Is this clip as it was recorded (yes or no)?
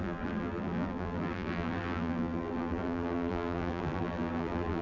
no